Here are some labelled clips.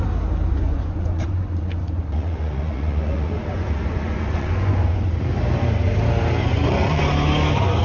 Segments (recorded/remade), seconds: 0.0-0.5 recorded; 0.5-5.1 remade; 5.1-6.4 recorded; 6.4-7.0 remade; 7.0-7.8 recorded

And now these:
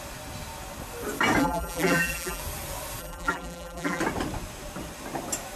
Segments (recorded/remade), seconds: 0.0-1.4 recorded; 1.4-2.4 remade; 2.4-3.0 recorded; 3.0-4.0 remade; 4.0-5.6 recorded

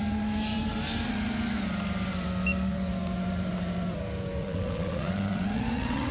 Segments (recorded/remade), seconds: 0.0-4.4 recorded; 4.4-6.1 remade

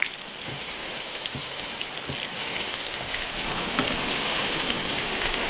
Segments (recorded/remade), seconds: 0.0-0.5 recorded; 0.5-1.9 remade; 1.9-2.4 recorded; 2.4-5.5 remade